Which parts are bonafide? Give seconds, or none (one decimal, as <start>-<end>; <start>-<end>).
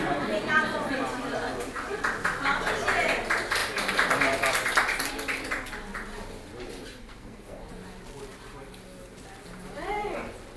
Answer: 0.0-7.0; 7.7-10.6